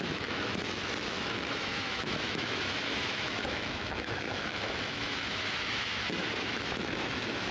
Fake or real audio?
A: fake